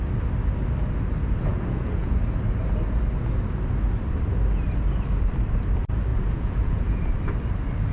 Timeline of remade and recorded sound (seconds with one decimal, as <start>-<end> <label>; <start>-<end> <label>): 0.0-1.5 recorded; 1.5-2.1 remade; 2.1-6.1 recorded; 6.1-7.1 remade; 7.1-7.9 recorded